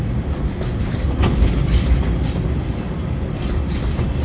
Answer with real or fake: real